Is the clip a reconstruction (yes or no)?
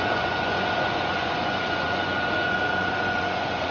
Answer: yes